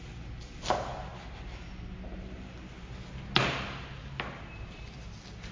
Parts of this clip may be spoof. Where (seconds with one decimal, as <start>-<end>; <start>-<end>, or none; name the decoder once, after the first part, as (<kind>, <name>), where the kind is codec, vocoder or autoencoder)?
none